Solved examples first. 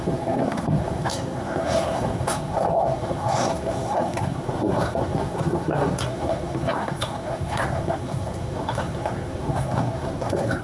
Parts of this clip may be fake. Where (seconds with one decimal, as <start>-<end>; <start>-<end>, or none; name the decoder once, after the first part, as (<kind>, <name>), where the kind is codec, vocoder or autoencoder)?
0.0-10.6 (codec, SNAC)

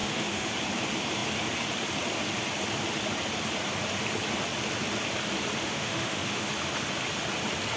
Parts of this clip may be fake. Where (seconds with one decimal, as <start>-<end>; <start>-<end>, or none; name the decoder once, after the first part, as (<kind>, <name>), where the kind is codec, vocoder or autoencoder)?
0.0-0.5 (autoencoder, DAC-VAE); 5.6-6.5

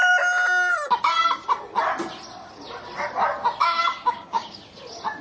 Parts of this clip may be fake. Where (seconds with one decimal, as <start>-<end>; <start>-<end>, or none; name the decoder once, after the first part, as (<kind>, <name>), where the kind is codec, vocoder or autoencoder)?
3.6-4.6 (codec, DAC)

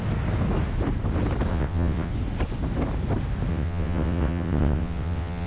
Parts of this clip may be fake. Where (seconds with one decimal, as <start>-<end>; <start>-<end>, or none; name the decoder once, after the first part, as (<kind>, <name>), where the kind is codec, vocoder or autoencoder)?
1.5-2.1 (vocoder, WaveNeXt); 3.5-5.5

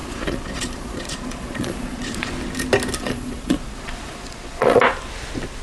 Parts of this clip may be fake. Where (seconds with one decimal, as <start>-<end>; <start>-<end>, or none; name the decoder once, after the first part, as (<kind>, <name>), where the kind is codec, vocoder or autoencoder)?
0.0-2.3 (vocoder, Vocos); 3.0-4.8